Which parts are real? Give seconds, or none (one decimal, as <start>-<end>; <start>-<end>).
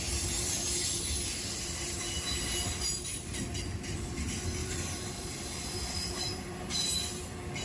0.0-4.6; 6.9-7.6